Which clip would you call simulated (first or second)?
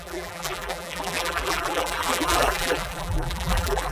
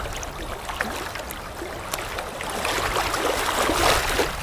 first